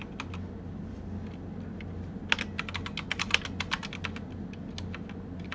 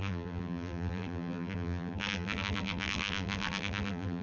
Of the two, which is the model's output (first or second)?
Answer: second